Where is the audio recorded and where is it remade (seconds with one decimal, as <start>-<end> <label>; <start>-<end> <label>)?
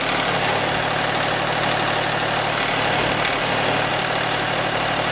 0.0-3.9 recorded; 3.9-5.1 remade